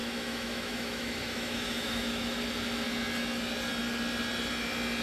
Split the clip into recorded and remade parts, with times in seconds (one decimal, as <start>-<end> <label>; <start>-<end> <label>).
0.0-2.4 remade; 2.4-5.0 recorded